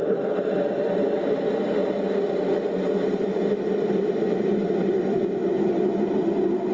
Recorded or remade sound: recorded